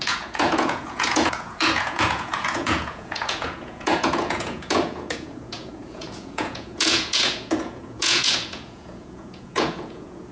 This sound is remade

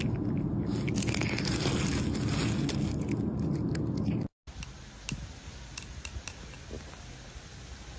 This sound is recorded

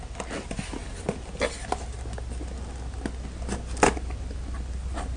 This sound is recorded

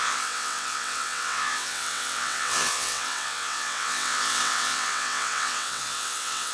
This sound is remade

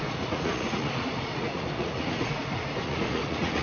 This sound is remade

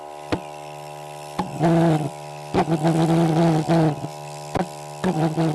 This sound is recorded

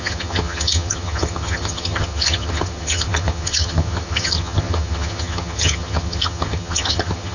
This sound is remade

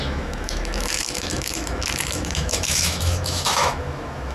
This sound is remade